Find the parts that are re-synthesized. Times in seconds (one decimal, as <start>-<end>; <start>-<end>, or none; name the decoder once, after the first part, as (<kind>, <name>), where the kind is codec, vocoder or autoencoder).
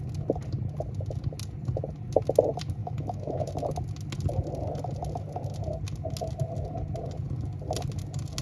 2.8-3.5 (autoencoder, DAC-VAE)